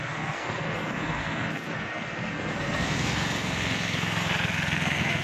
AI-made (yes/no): yes